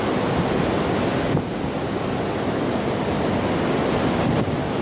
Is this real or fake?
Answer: real